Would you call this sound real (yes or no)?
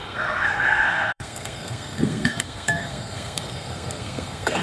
no